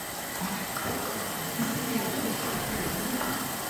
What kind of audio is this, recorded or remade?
recorded